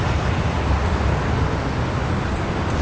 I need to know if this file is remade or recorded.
recorded